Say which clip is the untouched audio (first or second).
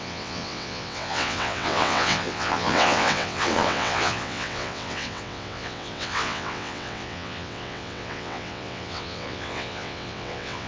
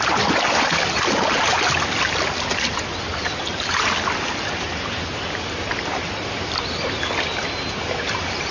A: second